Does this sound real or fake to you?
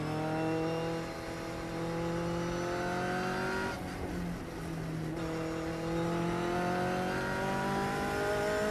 real